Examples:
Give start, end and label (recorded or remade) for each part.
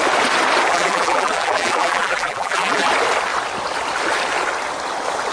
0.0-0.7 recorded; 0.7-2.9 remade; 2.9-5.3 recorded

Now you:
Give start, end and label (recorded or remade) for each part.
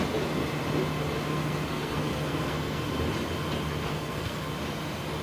0.0-1.3 recorded; 1.3-2.8 remade; 2.8-3.9 recorded; 3.9-4.4 remade; 4.4-5.2 recorded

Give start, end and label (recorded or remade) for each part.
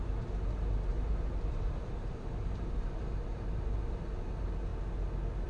0.0-0.9 recorded; 0.9-4.0 remade; 4.0-5.5 recorded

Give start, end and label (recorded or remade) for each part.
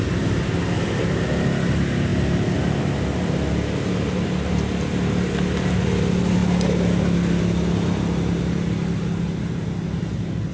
0.0-10.5 recorded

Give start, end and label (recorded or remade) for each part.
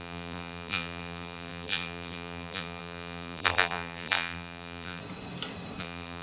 0.0-5.0 remade; 5.0-5.8 recorded; 5.8-6.2 remade